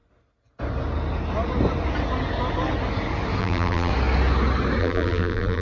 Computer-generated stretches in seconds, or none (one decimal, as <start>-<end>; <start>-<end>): 3.4-3.9; 4.8-5.6